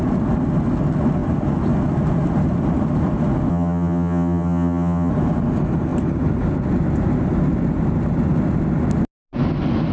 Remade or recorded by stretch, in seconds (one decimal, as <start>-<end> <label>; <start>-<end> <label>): 0.0-3.5 recorded; 3.5-5.1 remade; 5.1-9.9 recorded